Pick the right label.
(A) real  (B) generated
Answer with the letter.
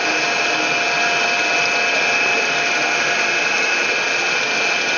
A